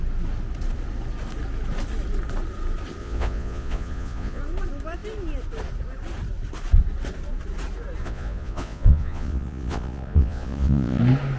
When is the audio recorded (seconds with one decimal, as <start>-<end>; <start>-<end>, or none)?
0.0-3.0; 4.4-8.0; 11.0-11.4